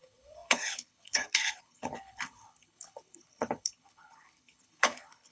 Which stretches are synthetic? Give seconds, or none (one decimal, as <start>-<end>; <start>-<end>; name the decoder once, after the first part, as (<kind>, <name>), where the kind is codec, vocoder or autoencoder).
0.0-5.3 (codec, HILCodec)